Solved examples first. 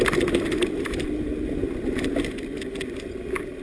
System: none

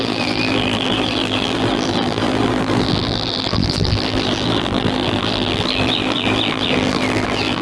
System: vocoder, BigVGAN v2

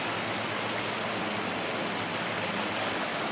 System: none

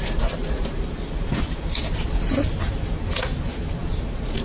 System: none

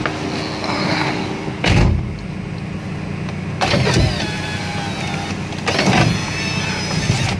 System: none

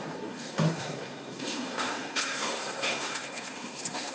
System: codec, SNAC